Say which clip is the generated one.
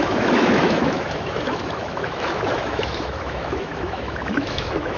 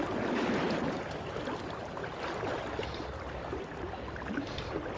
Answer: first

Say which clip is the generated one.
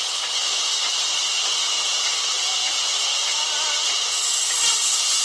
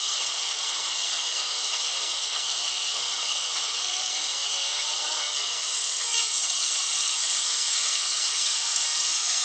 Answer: second